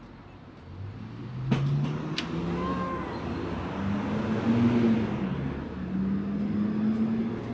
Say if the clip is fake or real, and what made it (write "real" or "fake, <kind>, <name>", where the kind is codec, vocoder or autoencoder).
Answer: real